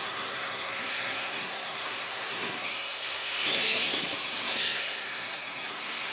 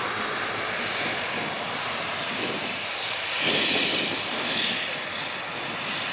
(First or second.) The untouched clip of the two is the second